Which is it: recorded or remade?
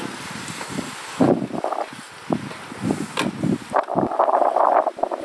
recorded